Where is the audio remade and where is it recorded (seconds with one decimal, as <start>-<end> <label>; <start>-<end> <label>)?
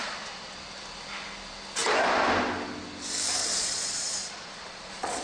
0.0-0.6 remade; 0.6-3.4 recorded; 3.4-5.2 remade